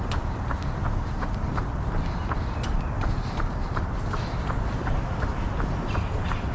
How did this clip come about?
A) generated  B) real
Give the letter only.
B